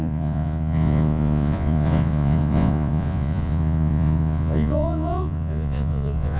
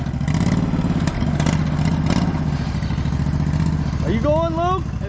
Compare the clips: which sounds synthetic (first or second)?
first